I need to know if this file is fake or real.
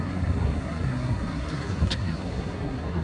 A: fake